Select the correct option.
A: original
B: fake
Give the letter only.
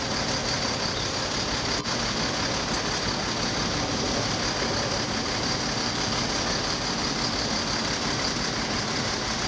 A